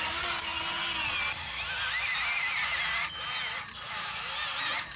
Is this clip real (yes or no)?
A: yes